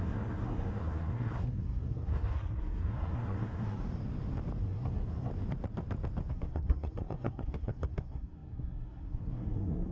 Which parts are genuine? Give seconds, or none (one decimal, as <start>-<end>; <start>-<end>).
3.8-4.6; 5.3-6.3